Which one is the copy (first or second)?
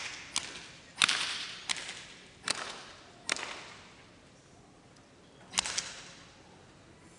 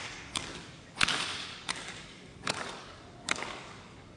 second